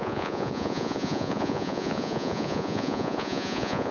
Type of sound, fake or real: fake